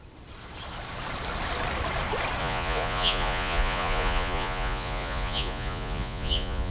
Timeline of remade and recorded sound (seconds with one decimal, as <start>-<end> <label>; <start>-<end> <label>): 0.0-2.4 recorded; 2.4-6.7 remade